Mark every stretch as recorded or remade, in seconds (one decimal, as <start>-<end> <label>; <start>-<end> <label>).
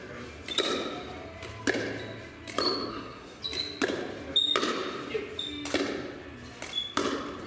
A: 0.0-2.9 recorded; 2.9-3.4 remade; 3.4-7.5 recorded